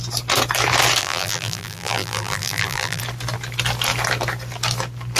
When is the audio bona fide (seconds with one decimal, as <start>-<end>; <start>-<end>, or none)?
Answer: 0.0-1.0; 3.0-5.2